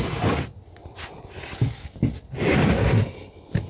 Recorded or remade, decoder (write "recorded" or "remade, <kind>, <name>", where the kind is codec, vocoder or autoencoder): recorded